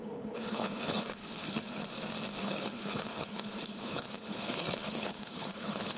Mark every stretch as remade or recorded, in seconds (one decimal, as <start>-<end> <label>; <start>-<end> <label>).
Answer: 0.0-1.8 remade; 1.8-2.4 recorded; 2.4-6.0 remade

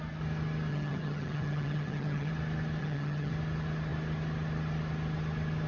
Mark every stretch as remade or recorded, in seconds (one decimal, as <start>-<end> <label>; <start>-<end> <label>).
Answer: 0.0-0.7 recorded; 0.7-2.3 remade; 2.3-2.8 recorded; 2.8-3.3 remade; 3.3-5.7 recorded

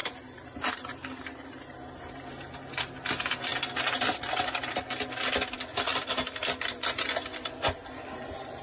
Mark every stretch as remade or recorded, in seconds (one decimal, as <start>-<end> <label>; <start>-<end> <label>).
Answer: 0.0-2.2 remade; 2.2-8.6 recorded

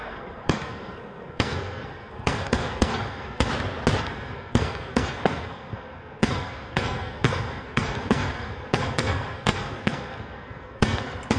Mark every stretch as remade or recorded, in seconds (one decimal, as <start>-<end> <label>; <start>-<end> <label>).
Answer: 0.0-3.5 remade; 3.5-4.0 recorded; 4.0-11.4 remade

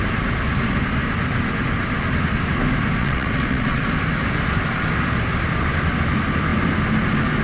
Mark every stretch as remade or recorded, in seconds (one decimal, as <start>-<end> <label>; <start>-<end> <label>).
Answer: 0.0-3.0 recorded; 3.0-3.8 remade; 3.8-7.4 recorded

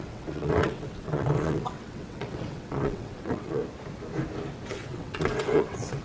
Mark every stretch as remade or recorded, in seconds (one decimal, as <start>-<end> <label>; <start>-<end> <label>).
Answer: 0.0-3.6 remade; 3.6-4.7 recorded; 4.7-6.0 remade

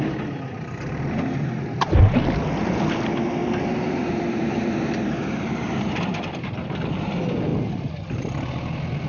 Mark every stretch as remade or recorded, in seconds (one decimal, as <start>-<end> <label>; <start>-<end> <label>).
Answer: 0.0-3.4 recorded; 3.4-6.3 remade; 6.3-9.1 recorded

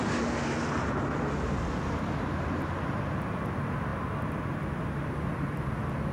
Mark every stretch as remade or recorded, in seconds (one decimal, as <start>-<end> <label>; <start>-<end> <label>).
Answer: 0.0-6.1 recorded